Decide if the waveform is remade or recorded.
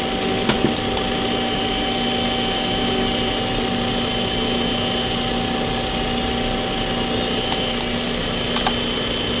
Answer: recorded